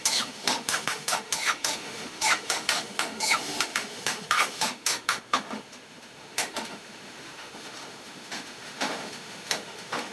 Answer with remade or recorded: remade